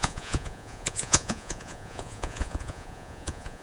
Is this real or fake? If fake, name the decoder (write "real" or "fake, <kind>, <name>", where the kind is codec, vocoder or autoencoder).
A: fake, vocoder, Vocos